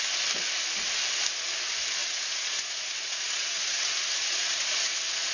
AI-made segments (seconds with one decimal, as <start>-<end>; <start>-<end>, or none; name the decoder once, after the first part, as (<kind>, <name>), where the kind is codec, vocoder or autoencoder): 2.0-5.3 (vocoder, Vocos)